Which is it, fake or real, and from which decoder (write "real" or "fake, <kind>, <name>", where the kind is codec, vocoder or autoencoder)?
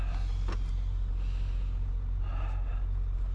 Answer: real